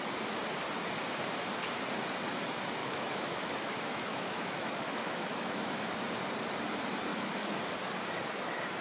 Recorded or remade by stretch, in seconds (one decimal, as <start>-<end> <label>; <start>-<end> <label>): 0.0-2.8 recorded; 2.8-5.8 remade; 5.8-7.1 recorded; 7.1-7.6 remade; 7.6-8.8 recorded